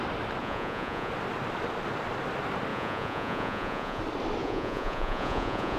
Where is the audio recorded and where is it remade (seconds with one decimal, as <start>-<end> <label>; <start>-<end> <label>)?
0.0-0.4 recorded; 0.4-1.1 remade; 1.1-2.7 recorded; 2.7-4.0 remade; 4.0-4.4 recorded; 4.4-5.8 remade